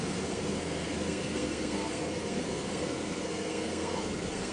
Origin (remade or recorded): remade